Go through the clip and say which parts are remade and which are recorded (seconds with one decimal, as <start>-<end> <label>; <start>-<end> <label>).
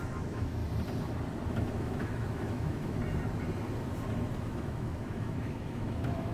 0.0-0.6 remade; 0.6-1.5 recorded; 1.5-3.0 remade; 3.0-4.4 recorded; 4.4-6.3 remade